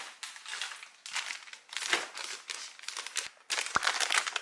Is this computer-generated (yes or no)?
no